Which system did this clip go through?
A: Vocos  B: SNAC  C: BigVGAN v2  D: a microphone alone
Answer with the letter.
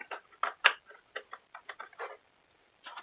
C